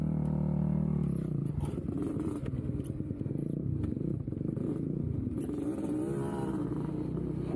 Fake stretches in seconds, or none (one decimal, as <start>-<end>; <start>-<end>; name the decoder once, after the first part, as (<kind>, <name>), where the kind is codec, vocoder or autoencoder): 0.0-7.6 (vocoder, BigVGAN v2)